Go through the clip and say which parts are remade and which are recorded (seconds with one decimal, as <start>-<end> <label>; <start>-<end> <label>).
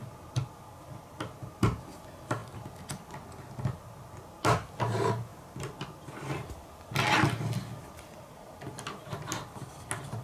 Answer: 0.0-10.2 recorded